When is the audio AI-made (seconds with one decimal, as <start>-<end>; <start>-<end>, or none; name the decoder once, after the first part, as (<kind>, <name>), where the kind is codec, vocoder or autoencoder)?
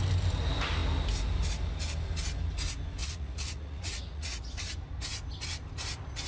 3.0-4.4 (vocoder, Vocos)